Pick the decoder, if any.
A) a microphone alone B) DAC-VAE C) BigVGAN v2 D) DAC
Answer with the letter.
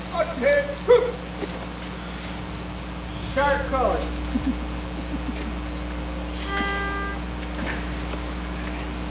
A